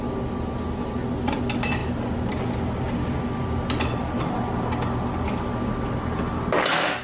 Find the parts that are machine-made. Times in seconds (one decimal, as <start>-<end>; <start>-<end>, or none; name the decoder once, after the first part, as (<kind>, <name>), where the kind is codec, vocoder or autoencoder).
none

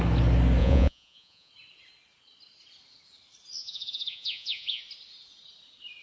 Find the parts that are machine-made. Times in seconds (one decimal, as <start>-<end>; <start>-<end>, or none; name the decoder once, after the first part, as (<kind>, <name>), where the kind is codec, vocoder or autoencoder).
0.6-1.5 (vocoder, Vocos); 3.6-4.8

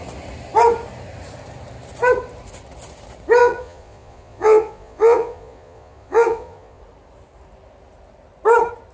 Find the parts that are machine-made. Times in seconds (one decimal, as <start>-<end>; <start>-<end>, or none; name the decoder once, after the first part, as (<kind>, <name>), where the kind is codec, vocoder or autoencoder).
3.4-6.8 (vocoder, Vocos)